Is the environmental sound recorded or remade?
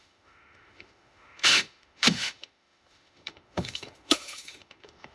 remade